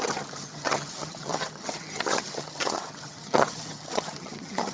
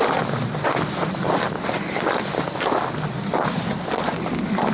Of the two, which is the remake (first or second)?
first